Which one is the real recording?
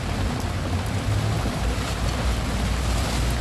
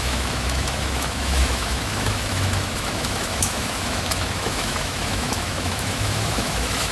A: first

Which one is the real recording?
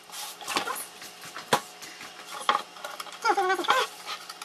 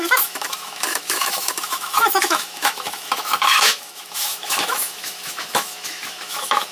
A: first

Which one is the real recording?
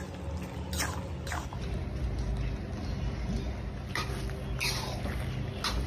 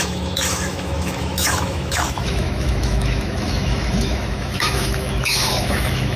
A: first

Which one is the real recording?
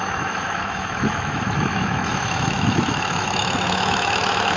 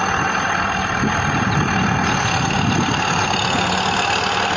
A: second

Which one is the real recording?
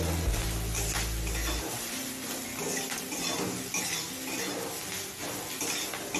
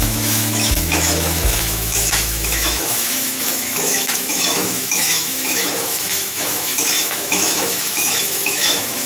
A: first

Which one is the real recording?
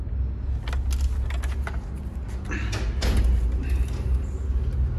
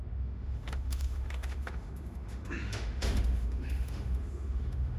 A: first